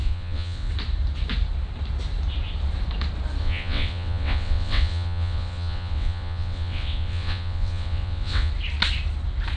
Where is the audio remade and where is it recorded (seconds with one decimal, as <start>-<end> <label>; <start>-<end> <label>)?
0.0-0.7 remade; 0.7-3.4 recorded; 3.4-8.5 remade; 8.5-9.6 recorded

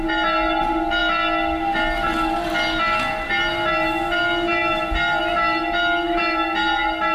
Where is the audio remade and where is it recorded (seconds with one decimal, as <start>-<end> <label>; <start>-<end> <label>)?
0.0-7.1 recorded

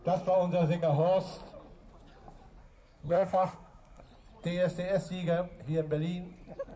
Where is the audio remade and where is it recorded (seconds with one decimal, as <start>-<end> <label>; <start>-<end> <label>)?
0.0-2.6 recorded; 2.6-4.0 remade; 4.0-6.8 recorded

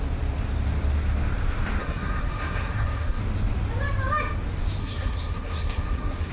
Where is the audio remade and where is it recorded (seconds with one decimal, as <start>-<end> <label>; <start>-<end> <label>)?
0.0-1.8 recorded; 1.8-3.2 remade; 3.2-4.8 recorded; 4.8-6.3 remade

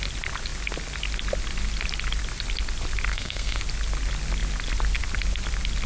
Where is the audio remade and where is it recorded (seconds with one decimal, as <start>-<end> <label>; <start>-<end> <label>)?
0.0-3.1 recorded; 3.1-3.6 remade; 3.6-5.9 recorded

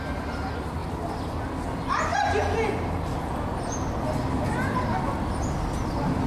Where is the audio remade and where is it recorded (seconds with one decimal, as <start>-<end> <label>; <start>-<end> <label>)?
0.0-6.3 recorded

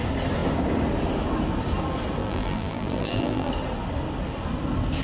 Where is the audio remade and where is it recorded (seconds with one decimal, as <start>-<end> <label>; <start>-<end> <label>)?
0.0-2.2 recorded; 2.2-3.5 remade; 3.5-5.0 recorded